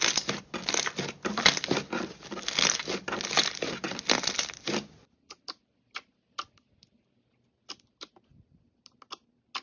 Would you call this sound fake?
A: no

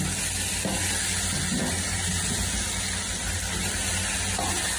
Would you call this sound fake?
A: no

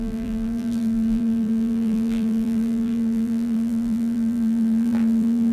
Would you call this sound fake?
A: yes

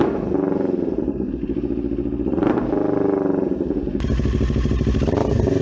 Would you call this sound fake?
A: no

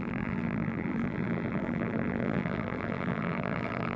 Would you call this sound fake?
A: yes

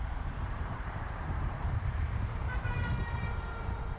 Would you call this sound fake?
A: yes